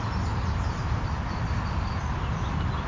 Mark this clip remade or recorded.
recorded